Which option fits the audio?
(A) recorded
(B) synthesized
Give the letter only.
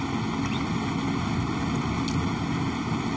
A